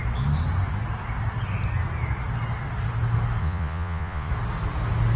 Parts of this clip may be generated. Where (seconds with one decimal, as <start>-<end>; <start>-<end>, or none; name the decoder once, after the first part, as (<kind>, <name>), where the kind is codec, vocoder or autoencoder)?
3.4-4.3 (vocoder, Vocos)